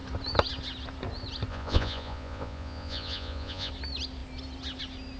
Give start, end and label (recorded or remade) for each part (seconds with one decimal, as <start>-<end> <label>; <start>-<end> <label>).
0.0-1.5 recorded; 1.5-3.7 remade; 3.7-5.2 recorded

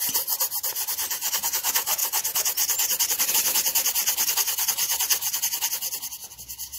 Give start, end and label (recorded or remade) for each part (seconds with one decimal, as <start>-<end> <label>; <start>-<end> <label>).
0.0-6.8 recorded

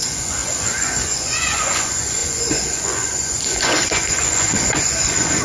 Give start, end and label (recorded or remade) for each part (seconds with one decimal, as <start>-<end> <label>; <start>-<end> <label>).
0.0-5.4 remade

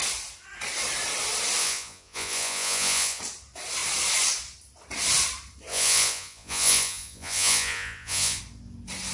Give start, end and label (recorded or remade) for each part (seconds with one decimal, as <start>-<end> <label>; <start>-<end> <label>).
0.0-1.6 recorded; 1.6-3.2 remade; 3.2-5.7 recorded; 5.7-8.4 remade; 8.4-9.1 recorded